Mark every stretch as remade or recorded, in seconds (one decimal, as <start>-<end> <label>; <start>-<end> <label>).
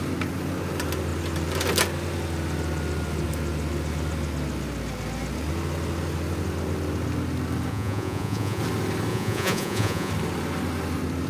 0.0-7.7 recorded; 7.7-8.6 remade; 8.6-9.1 recorded; 9.1-10.1 remade; 10.1-11.3 recorded